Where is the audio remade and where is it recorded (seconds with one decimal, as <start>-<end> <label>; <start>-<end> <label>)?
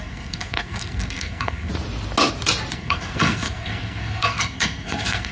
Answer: 0.0-1.7 remade; 1.7-2.7 recorded; 2.7-5.3 remade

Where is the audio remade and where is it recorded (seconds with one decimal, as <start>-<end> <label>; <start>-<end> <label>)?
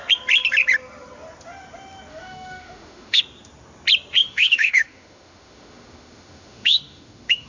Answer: 0.0-2.1 recorded; 2.1-3.2 remade; 3.2-4.2 recorded; 4.2-7.5 remade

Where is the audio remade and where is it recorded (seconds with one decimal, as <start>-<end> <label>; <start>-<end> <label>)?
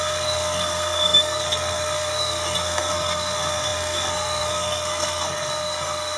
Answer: 0.0-6.2 remade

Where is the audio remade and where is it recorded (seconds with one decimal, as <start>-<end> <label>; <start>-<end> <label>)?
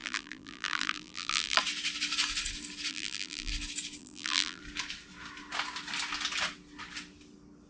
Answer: 0.0-1.6 remade; 1.6-2.9 recorded; 2.9-3.5 remade; 3.5-4.0 recorded; 4.0-4.6 remade; 4.6-7.7 recorded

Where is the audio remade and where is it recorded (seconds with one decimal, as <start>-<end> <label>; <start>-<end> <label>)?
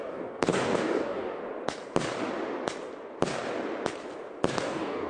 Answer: 0.0-1.4 remade; 1.4-4.5 recorded; 4.5-5.1 remade